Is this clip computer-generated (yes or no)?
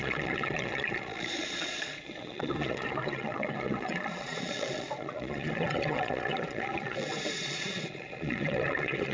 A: yes